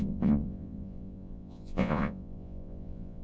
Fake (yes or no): yes